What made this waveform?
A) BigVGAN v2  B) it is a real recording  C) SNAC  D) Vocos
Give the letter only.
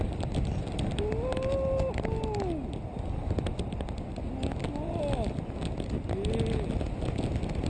B